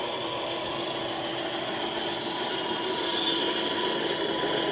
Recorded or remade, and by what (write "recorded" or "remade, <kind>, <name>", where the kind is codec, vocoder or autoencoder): recorded